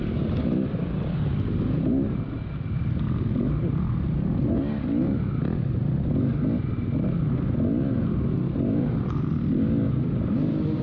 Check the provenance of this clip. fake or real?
real